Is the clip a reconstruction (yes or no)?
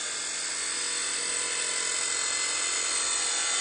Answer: no